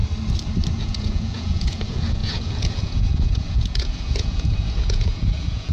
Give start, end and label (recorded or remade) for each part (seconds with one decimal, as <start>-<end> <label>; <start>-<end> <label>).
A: 0.0-0.7 recorded; 0.7-5.7 remade